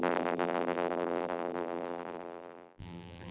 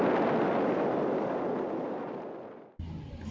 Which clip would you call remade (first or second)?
first